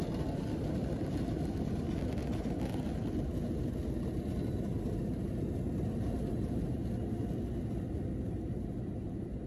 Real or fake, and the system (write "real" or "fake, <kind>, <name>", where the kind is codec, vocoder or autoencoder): real